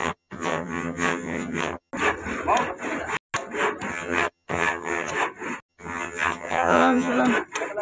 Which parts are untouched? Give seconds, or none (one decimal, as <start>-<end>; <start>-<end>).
1.9-3.9; 5.1-5.7; 7.1-7.8